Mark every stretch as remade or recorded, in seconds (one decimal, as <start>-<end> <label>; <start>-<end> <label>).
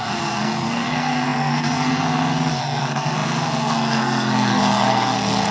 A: 0.0-5.5 remade